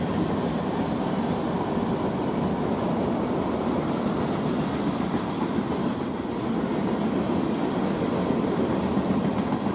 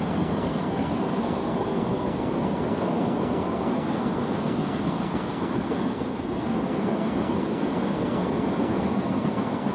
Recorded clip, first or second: first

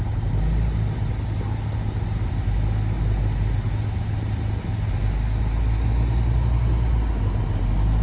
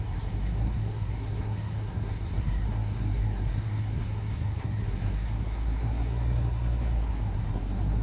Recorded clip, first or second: first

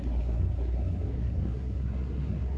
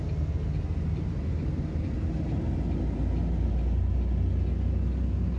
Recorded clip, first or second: second